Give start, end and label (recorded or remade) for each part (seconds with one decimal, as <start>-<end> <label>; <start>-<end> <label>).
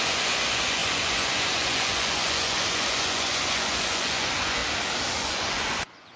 0.0-4.6 remade; 4.6-5.2 recorded; 5.2-6.2 remade